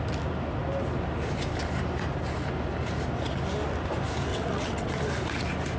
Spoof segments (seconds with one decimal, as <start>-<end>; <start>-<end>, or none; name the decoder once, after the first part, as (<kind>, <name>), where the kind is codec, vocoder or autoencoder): 4.3-4.9 (vocoder, WaveNeXt)